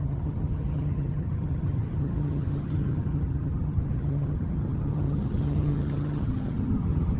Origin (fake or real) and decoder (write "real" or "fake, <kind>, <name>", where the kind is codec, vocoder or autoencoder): fake, vocoder, HiFi-GAN